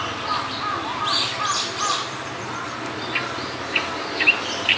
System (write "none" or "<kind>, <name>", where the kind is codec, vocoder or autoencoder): none